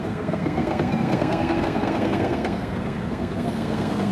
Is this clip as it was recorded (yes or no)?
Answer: no